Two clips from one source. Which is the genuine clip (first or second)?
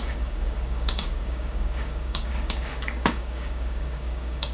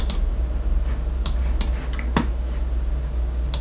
second